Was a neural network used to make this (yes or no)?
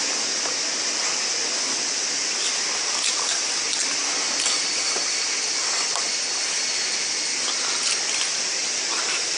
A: no